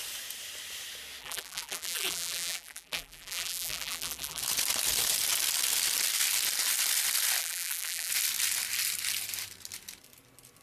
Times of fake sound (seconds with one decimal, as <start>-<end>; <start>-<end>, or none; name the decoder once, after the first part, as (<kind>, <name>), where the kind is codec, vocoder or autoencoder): 1.2-4.4 (vocoder, BigVGAN v2); 7.4-8.1